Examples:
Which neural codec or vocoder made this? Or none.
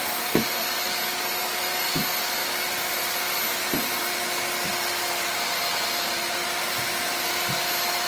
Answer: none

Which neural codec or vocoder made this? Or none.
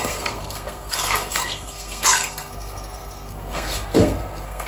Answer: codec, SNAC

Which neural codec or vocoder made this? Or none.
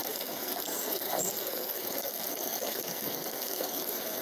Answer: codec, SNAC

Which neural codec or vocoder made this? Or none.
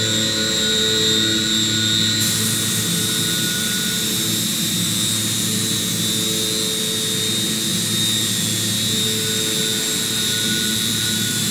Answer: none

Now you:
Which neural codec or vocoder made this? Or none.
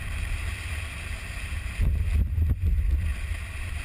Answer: none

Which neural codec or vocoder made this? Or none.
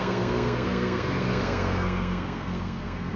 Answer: codec, SNAC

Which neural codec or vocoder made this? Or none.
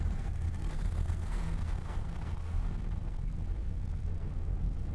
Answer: codec, SNAC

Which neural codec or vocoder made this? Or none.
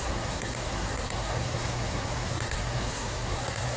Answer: codec, SNAC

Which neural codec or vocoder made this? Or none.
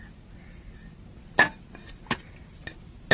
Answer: none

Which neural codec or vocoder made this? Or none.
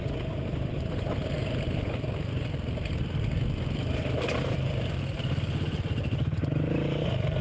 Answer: none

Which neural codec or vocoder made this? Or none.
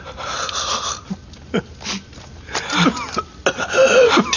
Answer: none